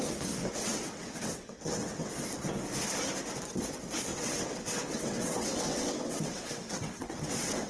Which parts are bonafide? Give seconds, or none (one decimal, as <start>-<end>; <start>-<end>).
0.0-0.6; 2.1-4.1